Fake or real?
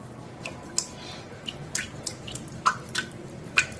fake